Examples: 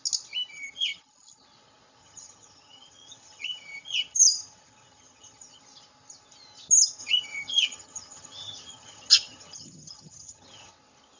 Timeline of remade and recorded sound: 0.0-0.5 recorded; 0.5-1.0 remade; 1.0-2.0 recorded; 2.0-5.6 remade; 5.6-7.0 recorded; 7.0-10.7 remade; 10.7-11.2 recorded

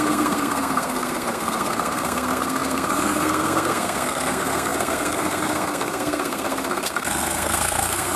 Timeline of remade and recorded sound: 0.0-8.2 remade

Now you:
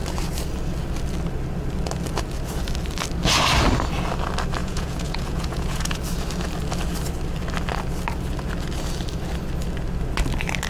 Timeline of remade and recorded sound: 0.0-4.6 recorded; 4.6-6.0 remade; 6.0-10.7 recorded

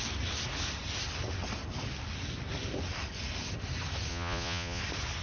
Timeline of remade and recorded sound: 0.0-4.1 recorded; 4.1-4.8 remade; 4.8-5.2 recorded

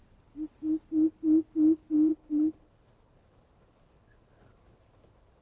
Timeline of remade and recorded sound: 0.0-2.1 recorded; 2.1-5.4 remade

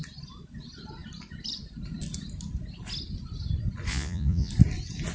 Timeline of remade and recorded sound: 0.0-3.9 recorded; 3.9-4.5 remade; 4.5-5.1 recorded